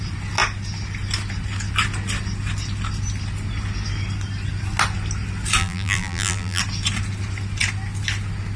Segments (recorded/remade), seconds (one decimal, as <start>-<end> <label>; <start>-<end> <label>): 0.0-5.6 recorded; 5.6-6.6 remade; 6.6-8.6 recorded